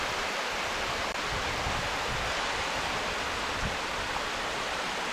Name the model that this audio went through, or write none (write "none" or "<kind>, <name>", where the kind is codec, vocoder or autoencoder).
none